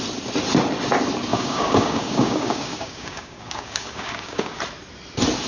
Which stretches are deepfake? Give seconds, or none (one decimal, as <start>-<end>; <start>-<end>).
1.3-4.6